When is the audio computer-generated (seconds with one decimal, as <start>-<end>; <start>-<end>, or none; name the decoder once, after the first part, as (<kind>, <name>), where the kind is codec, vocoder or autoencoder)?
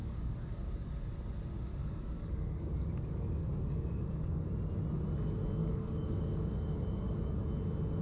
0.0-0.9 (codec, DAC); 1.7-4.5; 5.6-7.3